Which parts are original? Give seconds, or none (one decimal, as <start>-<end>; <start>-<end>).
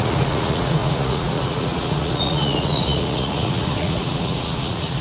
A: none